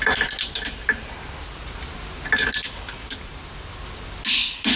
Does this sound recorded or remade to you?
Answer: recorded